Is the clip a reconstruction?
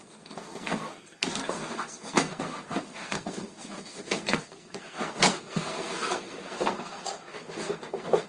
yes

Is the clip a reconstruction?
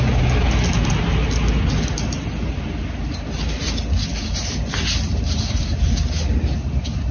no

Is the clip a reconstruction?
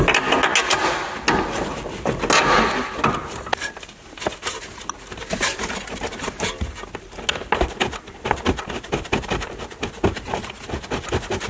no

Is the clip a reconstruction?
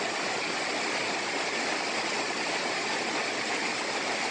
no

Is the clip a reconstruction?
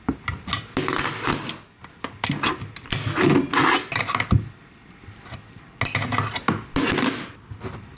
no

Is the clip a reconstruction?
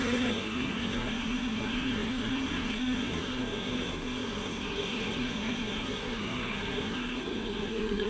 yes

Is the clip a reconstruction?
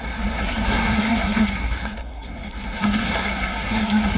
yes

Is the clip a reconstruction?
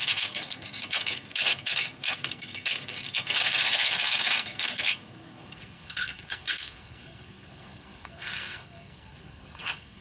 yes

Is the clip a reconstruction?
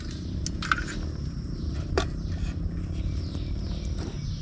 no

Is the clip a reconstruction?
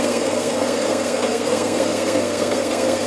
yes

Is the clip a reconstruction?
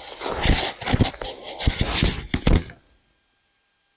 no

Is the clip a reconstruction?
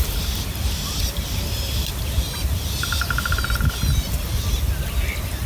no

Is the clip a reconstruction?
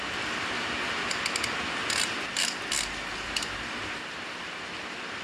no